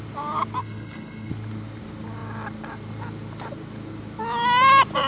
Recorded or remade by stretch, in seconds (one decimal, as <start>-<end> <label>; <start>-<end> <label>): 0.0-0.6 recorded; 0.6-1.3 remade; 1.3-5.1 recorded